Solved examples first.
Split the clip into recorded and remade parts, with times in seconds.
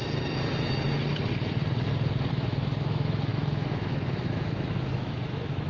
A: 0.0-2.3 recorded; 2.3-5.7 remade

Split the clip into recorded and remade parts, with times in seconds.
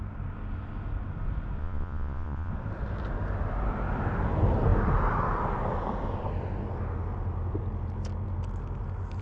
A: 0.0-1.6 recorded; 1.6-2.5 remade; 2.5-9.2 recorded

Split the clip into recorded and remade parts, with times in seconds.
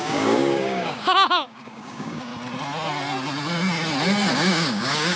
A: 0.0-2.3 remade; 2.3-4.3 recorded; 4.3-5.2 remade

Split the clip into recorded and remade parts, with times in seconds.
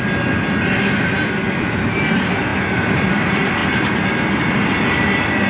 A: 0.0-5.5 recorded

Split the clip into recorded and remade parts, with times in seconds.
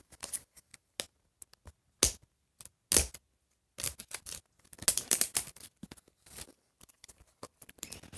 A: 0.0-0.7 remade; 0.7-4.9 recorded; 4.9-8.2 remade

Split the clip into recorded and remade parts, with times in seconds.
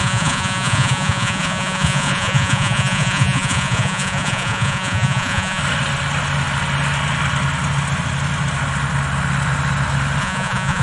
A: 0.0-5.6 remade; 5.6-10.2 recorded; 10.2-10.8 remade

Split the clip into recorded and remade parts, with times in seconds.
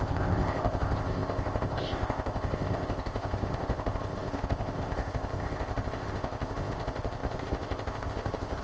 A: 0.0-8.6 remade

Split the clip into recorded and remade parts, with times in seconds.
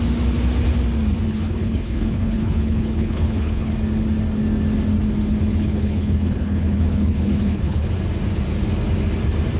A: 0.0-1.3 recorded; 1.3-3.7 remade; 3.7-5.5 recorded; 5.5-7.9 remade; 7.9-9.6 recorded